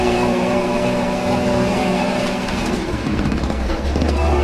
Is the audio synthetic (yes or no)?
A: yes